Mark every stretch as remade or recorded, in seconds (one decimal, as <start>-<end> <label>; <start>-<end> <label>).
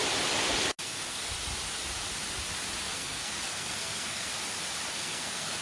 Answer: 0.0-0.8 recorded; 0.8-1.3 remade; 1.3-2.8 recorded; 2.8-4.3 remade; 4.3-4.9 recorded; 4.9-5.6 remade